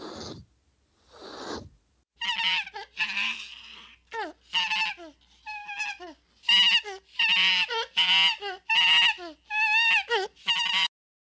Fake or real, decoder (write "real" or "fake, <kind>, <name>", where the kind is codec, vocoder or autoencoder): real